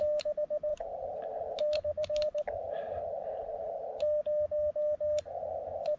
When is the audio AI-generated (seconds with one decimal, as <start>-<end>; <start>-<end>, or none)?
0.7-3.7